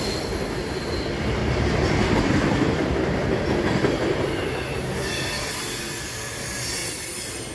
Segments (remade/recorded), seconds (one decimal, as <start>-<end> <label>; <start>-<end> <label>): 0.0-7.5 recorded